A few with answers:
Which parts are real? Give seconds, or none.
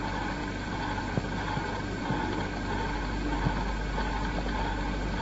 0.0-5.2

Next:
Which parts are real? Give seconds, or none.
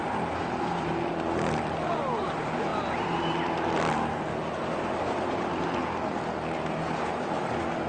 0.0-7.9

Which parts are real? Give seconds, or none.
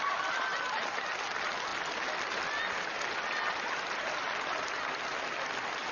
0.0-5.9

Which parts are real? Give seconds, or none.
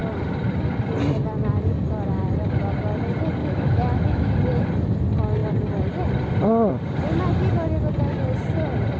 0.0-3.4; 4.3-9.0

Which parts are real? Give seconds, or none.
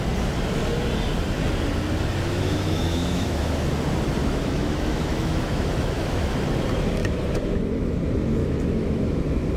0.0-2.3; 3.7-4.2; 6.4-7.0; 8.0-8.4; 9.2-9.6